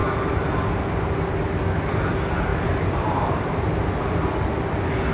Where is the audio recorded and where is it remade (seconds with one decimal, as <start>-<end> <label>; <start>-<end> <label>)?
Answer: 0.0-2.5 recorded; 2.5-3.6 remade; 3.6-5.1 recorded